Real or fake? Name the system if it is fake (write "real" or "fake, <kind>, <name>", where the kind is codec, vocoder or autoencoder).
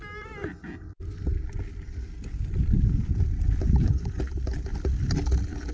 real